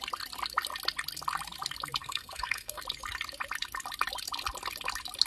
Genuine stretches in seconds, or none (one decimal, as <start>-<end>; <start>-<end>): 0.0-2.0; 2.8-5.3